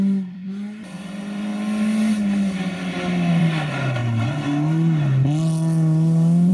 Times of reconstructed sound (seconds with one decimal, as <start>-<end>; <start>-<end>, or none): 0.0-1.5; 3.3-4.0